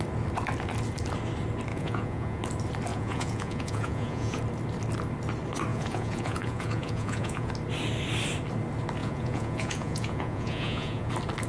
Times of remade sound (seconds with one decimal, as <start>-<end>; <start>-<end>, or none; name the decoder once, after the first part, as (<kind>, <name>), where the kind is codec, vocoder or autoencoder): 1.7-2.4 (vocoder, Vocos); 2.9-4.4; 5.7-7.5; 9.0-11.1